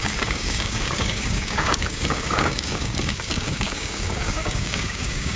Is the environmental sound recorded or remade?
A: remade